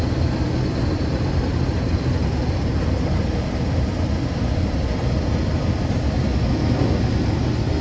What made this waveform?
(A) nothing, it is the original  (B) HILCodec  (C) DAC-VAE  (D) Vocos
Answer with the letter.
A